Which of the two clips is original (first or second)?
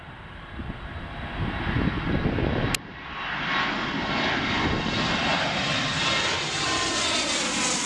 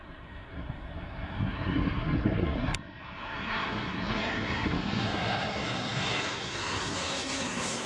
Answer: first